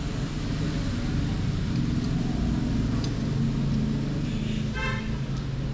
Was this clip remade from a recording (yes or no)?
no